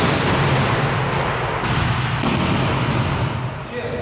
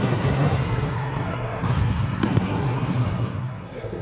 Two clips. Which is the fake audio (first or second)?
second